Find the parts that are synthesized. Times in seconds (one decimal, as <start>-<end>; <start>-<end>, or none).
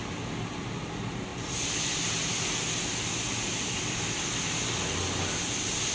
none